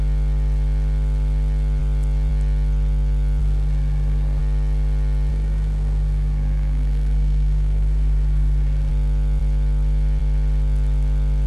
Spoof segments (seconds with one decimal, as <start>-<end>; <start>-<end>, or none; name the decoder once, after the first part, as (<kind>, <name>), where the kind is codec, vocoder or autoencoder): 3.4-4.4 (codec, SNAC); 5.3-8.9